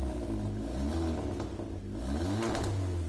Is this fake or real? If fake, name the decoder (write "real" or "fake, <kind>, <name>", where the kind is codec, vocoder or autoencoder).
real